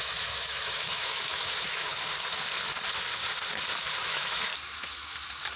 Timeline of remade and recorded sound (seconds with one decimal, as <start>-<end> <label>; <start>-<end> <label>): 0.0-1.9 remade; 1.9-4.0 recorded; 4.0-4.5 remade; 4.5-5.6 recorded